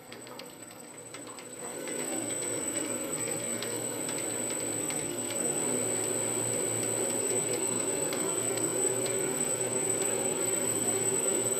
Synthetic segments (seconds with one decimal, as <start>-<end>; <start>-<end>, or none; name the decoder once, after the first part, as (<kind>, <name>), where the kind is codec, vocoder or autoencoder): 0.0-0.9 (codec, SNAC); 1.6-4.0; 4.8-5.6; 7.2-11.6